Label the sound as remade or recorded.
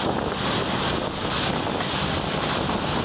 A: recorded